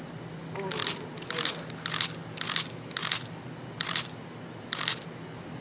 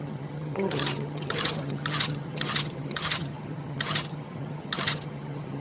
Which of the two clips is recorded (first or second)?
first